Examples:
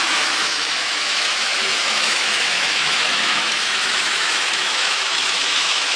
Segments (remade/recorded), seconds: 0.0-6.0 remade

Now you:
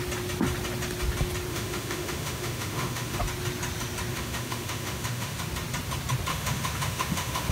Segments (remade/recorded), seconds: 0.0-1.5 recorded; 1.5-3.2 remade; 3.2-4.1 recorded; 4.1-5.4 remade; 5.4-6.3 recorded; 6.3-7.5 remade

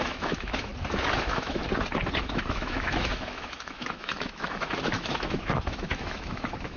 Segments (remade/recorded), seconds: 0.0-0.7 remade; 0.7-1.2 recorded; 1.2-1.6 remade; 1.6-2.2 recorded; 2.2-6.8 remade

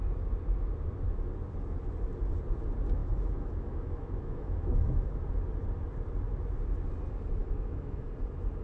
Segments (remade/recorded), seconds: 0.0-3.0 recorded; 3.0-5.2 remade; 5.2-7.4 recorded; 7.4-8.1 remade; 8.1-8.6 recorded

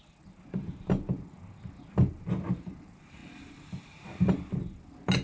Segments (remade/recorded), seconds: 0.0-5.2 recorded

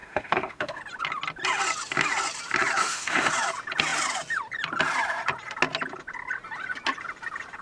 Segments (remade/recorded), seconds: 0.0-0.8 remade; 0.8-2.8 recorded; 2.8-3.3 remade; 3.3-7.6 recorded

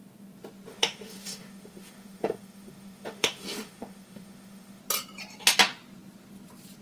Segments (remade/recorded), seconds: 0.0-0.7 recorded; 0.7-4.8 remade; 4.8-6.8 recorded